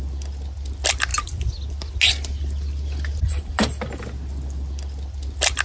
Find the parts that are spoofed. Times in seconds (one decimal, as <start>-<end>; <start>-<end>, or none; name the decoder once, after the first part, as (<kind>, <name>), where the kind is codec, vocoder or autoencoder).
none

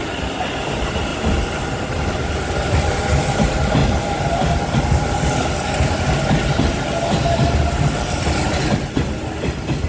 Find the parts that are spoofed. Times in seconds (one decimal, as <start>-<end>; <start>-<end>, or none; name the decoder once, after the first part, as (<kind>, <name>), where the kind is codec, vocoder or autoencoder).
none

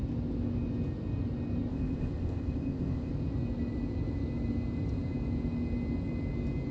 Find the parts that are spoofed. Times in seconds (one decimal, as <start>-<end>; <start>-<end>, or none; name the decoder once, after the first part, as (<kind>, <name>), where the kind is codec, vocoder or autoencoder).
1.7-3.1 (codec, ZipCodec)

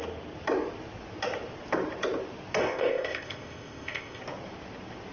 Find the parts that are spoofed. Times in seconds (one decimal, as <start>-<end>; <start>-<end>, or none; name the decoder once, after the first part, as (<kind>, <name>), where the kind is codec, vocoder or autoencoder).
2.6-4.2 (codec, ZipCodec)

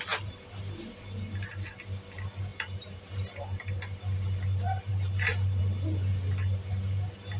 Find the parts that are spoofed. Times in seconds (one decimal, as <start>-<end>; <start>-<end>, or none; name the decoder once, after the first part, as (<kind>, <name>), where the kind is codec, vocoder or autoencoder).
none